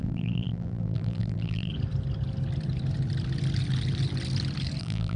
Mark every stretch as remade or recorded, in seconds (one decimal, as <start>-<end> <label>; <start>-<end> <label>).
0.0-1.7 remade; 1.7-4.8 recorded; 4.8-5.2 remade